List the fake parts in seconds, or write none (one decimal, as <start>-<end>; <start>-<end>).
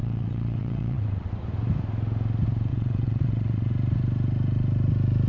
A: 0.0-1.3; 2.7-3.7